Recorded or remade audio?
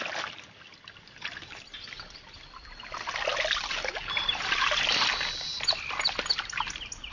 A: recorded